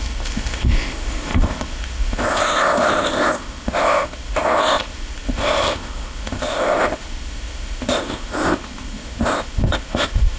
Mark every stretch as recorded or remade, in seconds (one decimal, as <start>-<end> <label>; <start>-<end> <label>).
0.0-10.4 remade

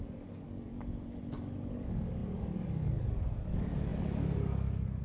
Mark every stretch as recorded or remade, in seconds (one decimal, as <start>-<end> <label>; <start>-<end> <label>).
0.0-0.7 remade; 0.7-1.7 recorded; 1.7-5.0 remade

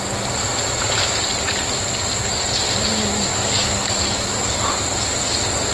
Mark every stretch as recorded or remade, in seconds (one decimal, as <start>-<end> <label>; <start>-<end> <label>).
0.0-3.3 recorded; 3.3-4.7 remade; 4.7-5.7 recorded

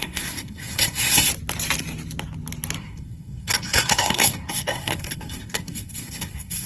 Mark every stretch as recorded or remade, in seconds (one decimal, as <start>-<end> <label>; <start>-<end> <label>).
0.0-1.3 remade; 1.3-2.8 recorded; 2.8-6.7 remade

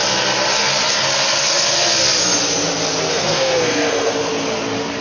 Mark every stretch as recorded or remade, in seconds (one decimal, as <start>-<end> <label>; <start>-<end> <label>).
0.0-3.1 recorded; 3.1-4.1 remade; 4.1-5.0 recorded